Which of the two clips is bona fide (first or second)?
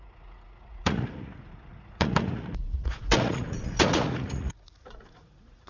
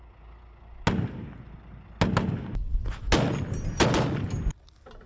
second